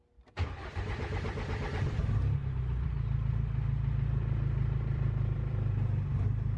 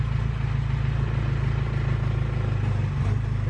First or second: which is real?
second